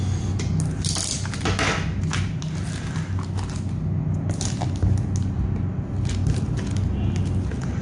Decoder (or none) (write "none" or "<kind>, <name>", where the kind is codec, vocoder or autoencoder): none